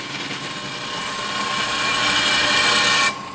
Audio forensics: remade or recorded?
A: recorded